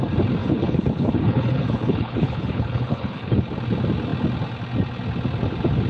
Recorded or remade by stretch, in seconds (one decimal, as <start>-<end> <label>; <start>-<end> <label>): 0.0-0.4 recorded; 0.4-3.4 remade; 3.4-5.9 recorded